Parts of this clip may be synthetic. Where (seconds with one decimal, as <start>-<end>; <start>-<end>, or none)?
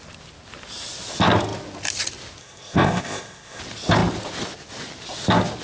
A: 2.4-3.6